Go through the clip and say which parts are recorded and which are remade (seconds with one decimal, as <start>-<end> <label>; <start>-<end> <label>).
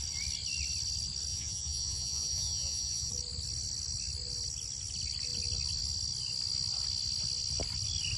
0.0-1.3 recorded; 1.3-3.1 remade; 3.1-8.2 recorded